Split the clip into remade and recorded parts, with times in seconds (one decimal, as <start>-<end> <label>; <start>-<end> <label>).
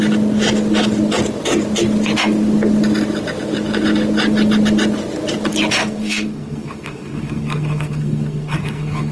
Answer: 0.0-5.8 recorded; 5.8-9.1 remade